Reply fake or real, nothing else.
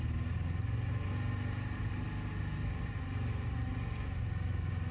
real